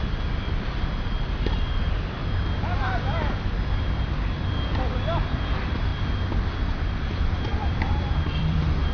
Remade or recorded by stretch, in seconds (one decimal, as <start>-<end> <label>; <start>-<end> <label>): 0.0-3.3 recorded; 3.3-5.9 remade; 5.9-6.7 recorded; 6.7-8.9 remade